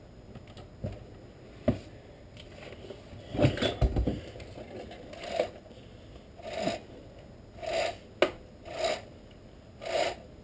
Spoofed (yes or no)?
no